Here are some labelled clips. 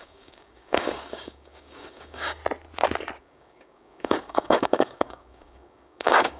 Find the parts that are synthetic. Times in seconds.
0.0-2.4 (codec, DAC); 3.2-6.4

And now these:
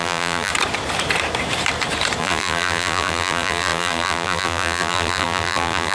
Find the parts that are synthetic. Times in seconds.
0.0-0.5 (vocoder, BigVGAN v2); 2.2-5.9

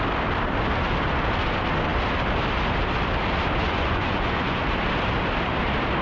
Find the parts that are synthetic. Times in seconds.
3.6-4.6 (vocoder, Vocos)

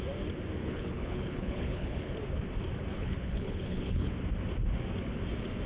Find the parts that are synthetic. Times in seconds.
0.6-2.1 (codec, HILCodec); 2.9-4.1

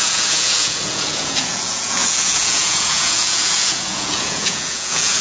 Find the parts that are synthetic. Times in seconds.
0.0-5.2 (vocoder, Vocos)

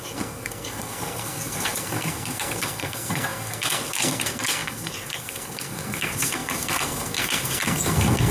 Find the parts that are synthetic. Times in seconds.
0.0-8.3 (codec, SNAC)

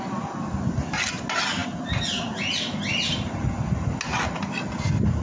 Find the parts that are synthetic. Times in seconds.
none

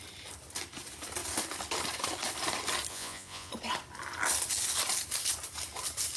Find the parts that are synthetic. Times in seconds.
2.9-3.5 (vocoder, Vocos)